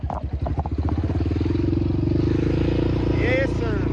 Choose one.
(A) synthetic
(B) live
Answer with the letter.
B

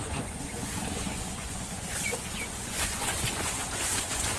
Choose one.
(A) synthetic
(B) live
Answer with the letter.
A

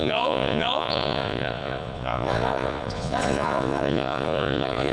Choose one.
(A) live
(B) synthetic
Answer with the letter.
B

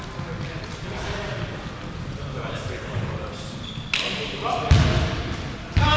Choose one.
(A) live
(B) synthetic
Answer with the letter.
A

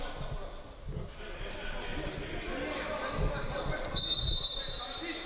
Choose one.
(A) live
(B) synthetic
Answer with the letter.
A